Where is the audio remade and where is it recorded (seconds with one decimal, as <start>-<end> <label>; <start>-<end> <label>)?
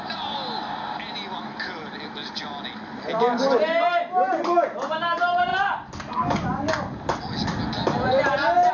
0.0-8.7 recorded